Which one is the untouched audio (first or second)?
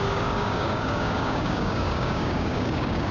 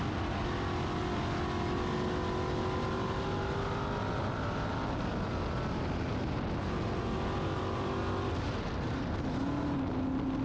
second